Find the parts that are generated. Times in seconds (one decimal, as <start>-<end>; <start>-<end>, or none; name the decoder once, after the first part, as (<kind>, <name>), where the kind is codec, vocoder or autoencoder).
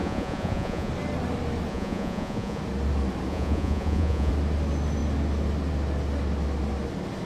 0.0-0.9 (vocoder, Vocos); 1.7-2.6; 3.3-4.3